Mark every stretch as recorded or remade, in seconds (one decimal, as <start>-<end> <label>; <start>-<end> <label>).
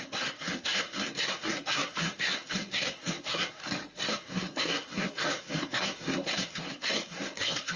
0.0-3.6 remade; 3.6-4.1 recorded; 4.1-7.8 remade